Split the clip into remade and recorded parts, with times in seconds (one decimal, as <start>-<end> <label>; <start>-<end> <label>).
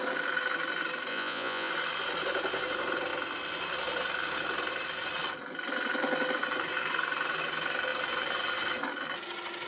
0.0-1.1 recorded; 1.1-1.7 remade; 1.7-9.7 recorded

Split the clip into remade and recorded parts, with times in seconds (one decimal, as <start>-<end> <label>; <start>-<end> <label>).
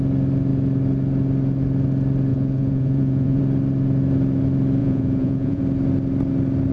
0.0-2.3 recorded; 2.3-3.4 remade; 3.4-4.8 recorded; 4.8-5.6 remade; 5.6-6.7 recorded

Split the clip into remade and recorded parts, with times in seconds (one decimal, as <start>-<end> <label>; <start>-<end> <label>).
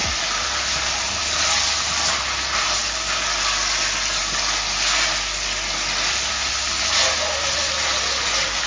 0.0-8.7 recorded